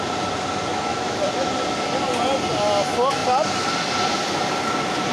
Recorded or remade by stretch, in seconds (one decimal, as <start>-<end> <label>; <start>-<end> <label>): 0.0-0.7 recorded; 0.7-1.2 remade; 1.2-5.1 recorded